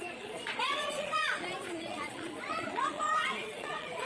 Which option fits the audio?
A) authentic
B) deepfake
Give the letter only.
B